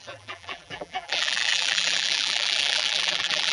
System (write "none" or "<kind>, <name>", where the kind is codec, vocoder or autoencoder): vocoder, BigVGAN v2